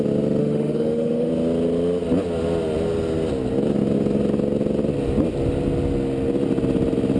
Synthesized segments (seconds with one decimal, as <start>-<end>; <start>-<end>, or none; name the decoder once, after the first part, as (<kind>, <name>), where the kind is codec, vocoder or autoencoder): 0.4-1.3 (autoencoder, DAC-VAE)